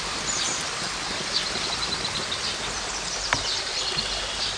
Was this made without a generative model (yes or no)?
no